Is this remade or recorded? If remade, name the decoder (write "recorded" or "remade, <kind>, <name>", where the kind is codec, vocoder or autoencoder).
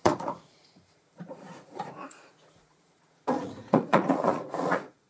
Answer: remade, vocoder, Vocos